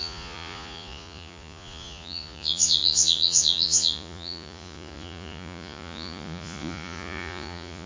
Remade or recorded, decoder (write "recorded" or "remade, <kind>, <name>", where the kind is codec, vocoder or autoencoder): remade, vocoder, Vocos